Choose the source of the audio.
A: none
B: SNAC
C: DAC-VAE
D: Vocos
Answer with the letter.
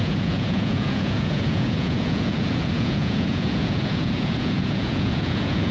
D